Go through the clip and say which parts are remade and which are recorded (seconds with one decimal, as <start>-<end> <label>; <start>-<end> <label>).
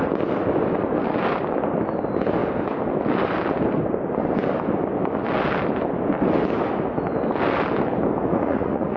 0.0-8.3 recorded; 8.3-9.0 remade